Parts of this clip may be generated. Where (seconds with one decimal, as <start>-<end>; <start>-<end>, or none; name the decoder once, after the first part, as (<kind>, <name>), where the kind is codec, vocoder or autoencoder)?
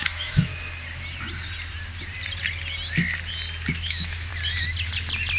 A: 0.0-0.5 (autoencoder, DAC-VAE); 3.7-4.3